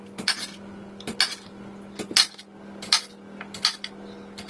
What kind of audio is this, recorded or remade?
recorded